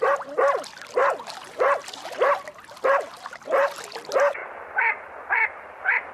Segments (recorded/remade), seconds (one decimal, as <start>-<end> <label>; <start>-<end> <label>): 0.0-6.1 recorded